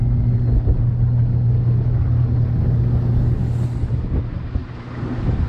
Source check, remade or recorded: recorded